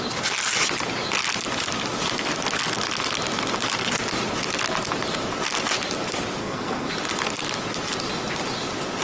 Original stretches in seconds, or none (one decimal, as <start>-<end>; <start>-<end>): 0.0-6.4; 6.9-9.0